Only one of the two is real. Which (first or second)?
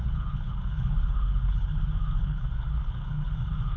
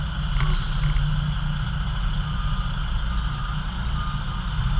second